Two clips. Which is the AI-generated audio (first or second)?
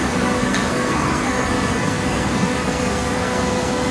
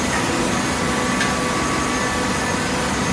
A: first